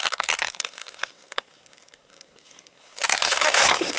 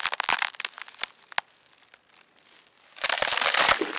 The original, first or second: second